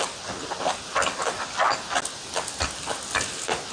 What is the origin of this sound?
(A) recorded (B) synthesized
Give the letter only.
A